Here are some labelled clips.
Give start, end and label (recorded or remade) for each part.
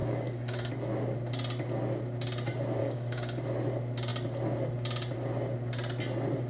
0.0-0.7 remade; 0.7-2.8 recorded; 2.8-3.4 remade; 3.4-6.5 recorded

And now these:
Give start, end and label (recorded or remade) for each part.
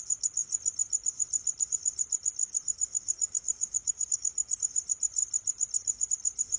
0.0-2.4 recorded; 2.4-4.6 remade; 4.6-6.6 recorded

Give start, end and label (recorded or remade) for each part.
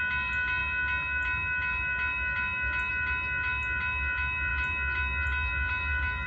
0.0-6.3 recorded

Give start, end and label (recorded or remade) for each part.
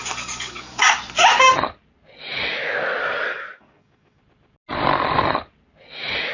0.0-0.9 remade; 0.9-3.0 recorded; 3.0-4.2 remade; 4.2-6.3 recorded